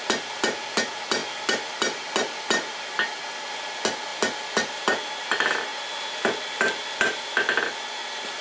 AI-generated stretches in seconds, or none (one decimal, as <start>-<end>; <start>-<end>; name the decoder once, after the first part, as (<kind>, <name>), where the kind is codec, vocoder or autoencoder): none